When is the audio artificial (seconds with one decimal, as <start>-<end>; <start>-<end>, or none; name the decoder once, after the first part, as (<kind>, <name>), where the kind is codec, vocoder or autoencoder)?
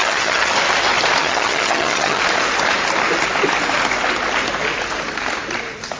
0.0-0.5 (vocoder, HiFi-GAN); 1.2-2.2